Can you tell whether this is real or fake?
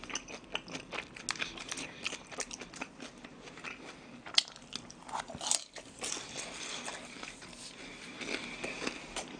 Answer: real